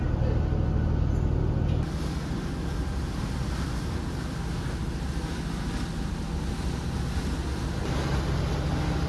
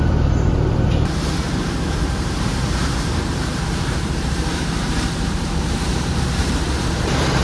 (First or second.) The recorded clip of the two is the first